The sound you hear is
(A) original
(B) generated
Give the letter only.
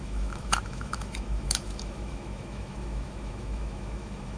B